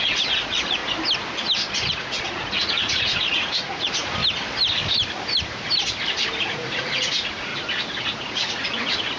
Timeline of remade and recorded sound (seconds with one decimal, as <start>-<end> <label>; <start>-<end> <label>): 0.0-0.8 remade; 0.8-1.9 recorded; 1.9-4.2 remade; 4.2-6.4 recorded; 6.4-7.5 remade; 7.5-8.0 recorded; 8.0-9.2 remade